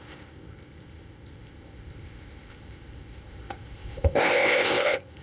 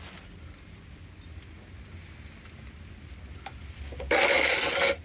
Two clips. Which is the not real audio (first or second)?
first